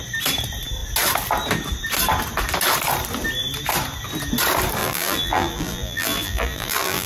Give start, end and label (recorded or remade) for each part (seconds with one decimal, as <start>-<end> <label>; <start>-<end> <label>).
0.0-4.8 recorded; 4.8-7.1 remade